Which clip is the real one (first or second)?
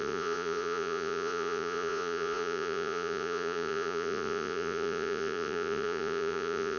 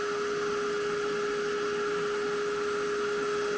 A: second